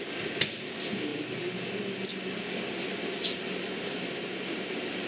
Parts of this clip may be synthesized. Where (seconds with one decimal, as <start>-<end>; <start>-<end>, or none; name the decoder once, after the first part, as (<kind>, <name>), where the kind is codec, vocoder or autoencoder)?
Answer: none